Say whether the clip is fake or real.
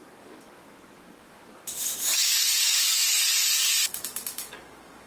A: fake